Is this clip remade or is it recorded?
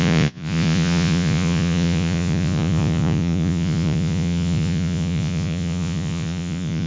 remade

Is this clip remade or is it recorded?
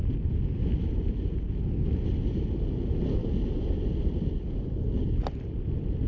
recorded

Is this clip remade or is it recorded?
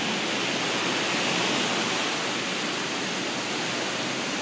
recorded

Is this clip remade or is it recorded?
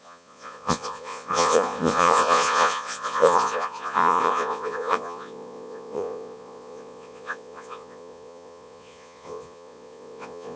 remade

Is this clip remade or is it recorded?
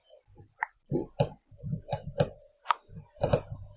recorded